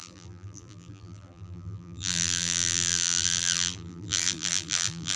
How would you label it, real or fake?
fake